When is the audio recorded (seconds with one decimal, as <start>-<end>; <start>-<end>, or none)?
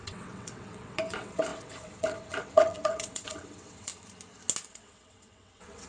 3.9-4.7